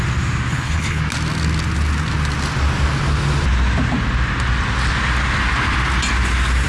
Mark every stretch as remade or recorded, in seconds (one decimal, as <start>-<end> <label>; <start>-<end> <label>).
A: 0.0-0.5 recorded; 0.5-1.0 remade; 1.0-6.7 recorded